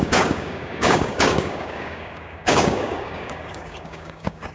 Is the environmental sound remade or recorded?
remade